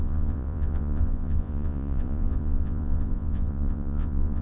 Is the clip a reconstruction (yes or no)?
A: yes